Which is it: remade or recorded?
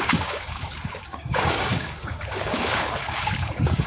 remade